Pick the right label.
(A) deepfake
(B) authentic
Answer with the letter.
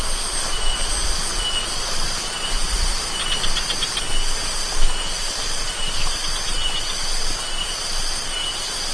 B